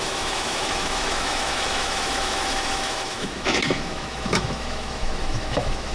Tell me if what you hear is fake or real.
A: fake